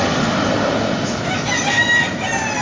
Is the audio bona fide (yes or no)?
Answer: yes